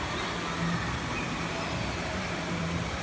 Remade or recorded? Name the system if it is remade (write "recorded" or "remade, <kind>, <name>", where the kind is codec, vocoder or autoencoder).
recorded